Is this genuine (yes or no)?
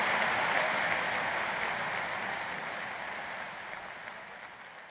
yes